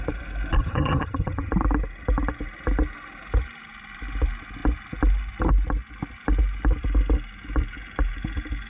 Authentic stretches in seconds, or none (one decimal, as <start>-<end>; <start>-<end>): 0.0-0.6; 1.5-8.7